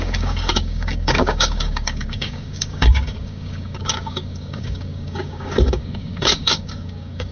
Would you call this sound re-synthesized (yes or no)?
yes